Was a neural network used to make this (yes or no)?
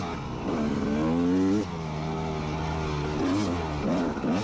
no